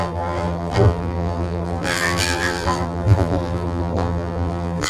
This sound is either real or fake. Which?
fake